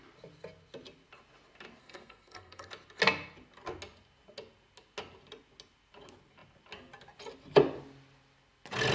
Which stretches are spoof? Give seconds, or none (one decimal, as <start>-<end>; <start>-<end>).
1.8-2.7